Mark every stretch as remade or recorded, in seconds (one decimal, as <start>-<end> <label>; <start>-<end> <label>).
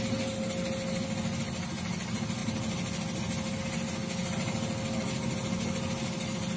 0.0-6.6 recorded